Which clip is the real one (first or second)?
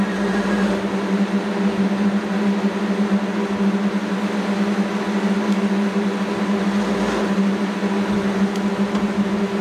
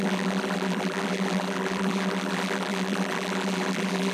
first